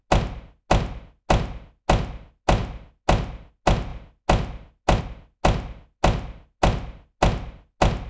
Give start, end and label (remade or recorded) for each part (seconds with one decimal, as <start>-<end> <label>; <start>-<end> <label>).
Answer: 0.0-8.1 recorded

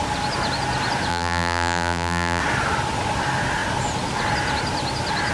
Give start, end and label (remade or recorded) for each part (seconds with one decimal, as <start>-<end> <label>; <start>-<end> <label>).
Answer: 0.0-1.1 recorded; 1.1-2.4 remade; 2.4-5.3 recorded

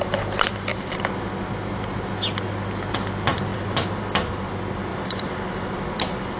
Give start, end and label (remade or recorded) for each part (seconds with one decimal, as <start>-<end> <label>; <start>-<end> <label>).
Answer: 0.0-0.7 recorded; 0.7-2.1 remade; 2.1-3.5 recorded; 3.5-4.5 remade; 4.5-4.9 recorded; 4.9-6.4 remade

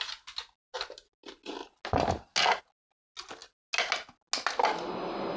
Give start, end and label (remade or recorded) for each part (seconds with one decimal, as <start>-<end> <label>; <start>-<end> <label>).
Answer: 0.0-5.4 recorded